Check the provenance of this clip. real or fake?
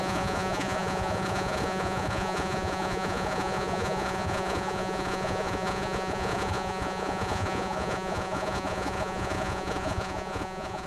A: fake